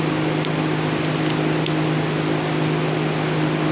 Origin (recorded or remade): recorded